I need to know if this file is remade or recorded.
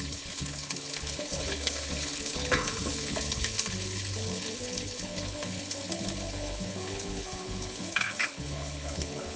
remade